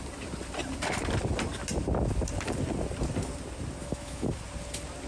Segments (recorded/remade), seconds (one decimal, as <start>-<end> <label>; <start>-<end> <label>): 0.0-3.8 recorded; 3.8-4.4 remade; 4.4-5.1 recorded